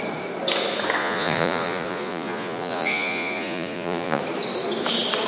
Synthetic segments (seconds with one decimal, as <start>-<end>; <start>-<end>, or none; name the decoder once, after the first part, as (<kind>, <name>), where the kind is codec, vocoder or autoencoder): 1.0-4.2 (vocoder, Vocos)